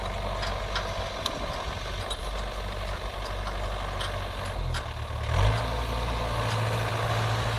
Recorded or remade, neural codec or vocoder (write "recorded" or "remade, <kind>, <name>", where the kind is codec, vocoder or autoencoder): recorded